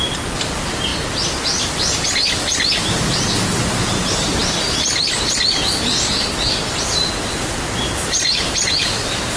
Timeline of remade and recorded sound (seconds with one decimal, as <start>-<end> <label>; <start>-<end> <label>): 0.0-0.9 remade; 0.9-3.9 recorded; 3.9-9.4 remade